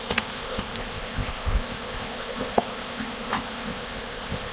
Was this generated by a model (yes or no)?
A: yes